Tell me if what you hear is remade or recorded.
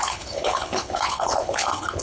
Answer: remade